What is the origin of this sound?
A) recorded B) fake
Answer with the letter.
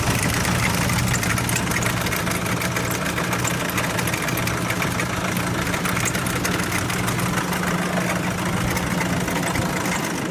A